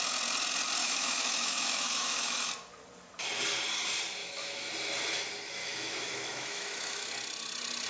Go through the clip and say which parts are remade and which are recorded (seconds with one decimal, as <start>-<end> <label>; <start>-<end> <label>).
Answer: 0.0-0.8 recorded; 0.8-2.5 remade; 2.5-4.2 recorded; 4.2-4.7 remade; 4.7-5.6 recorded; 5.6-7.1 remade; 7.1-7.9 recorded